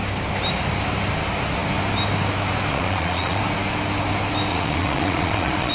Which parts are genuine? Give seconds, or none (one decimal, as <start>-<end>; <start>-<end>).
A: 0.0-2.7; 3.4-4.5